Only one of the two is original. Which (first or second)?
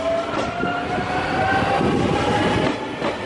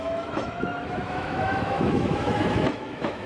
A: first